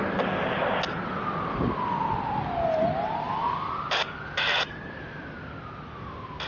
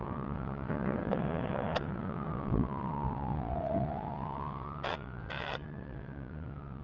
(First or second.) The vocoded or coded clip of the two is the second